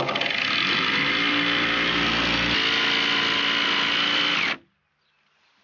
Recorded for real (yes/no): yes